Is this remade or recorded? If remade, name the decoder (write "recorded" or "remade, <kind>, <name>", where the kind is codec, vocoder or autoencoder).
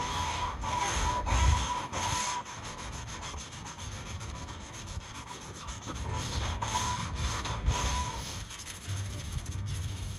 remade, codec, DAC